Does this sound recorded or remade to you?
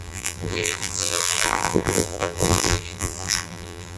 remade